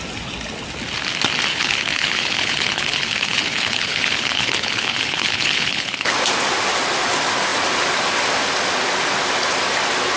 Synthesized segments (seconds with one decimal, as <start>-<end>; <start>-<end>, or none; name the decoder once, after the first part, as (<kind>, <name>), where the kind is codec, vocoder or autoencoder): 1.5-6.1 (codec, HILCodec)